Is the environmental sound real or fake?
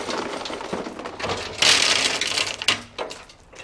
real